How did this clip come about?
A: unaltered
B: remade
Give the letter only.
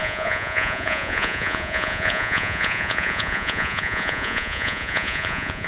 B